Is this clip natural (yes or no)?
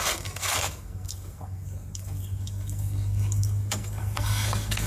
no